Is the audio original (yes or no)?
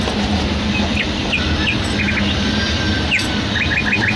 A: yes